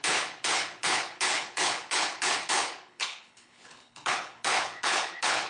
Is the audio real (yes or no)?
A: no